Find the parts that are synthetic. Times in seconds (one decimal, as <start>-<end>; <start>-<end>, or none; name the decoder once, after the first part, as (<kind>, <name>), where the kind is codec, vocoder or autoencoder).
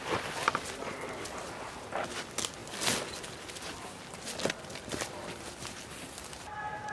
none